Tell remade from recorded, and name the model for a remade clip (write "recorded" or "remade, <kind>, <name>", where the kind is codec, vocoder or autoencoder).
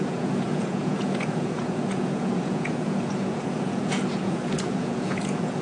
remade, vocoder, Vocos